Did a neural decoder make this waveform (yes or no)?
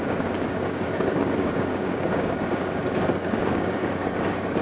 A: yes